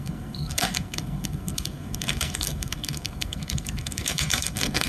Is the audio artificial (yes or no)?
yes